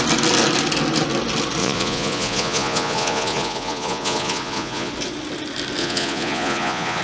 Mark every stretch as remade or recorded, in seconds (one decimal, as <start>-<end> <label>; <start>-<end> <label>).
0.0-1.6 recorded; 1.6-4.9 remade; 4.9-5.8 recorded; 5.8-7.0 remade